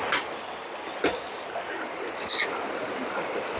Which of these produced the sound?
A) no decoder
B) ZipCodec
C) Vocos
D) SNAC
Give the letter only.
A